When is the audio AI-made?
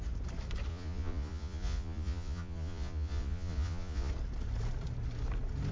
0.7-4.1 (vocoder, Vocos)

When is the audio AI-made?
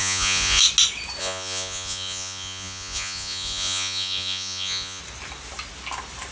0.0-0.6 (vocoder, Vocos); 1.2-5.0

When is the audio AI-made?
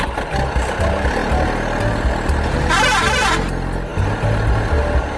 none